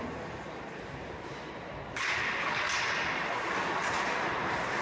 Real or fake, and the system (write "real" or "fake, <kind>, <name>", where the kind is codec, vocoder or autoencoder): real